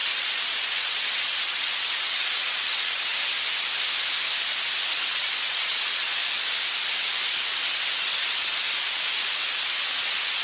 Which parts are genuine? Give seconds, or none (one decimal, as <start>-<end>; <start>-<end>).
3.1-4.9; 6.2-6.9